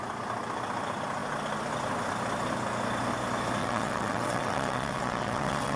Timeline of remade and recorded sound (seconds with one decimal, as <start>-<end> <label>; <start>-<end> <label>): 0.0-3.6 recorded; 3.6-5.8 remade